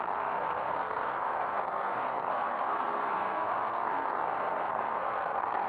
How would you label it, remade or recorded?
remade